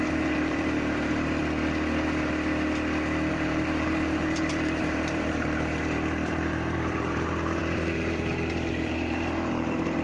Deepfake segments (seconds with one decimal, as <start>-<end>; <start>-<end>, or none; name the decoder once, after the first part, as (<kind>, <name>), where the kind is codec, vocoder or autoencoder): 0.0-1.4 (vocoder, BigVGAN v2); 3.3-10.0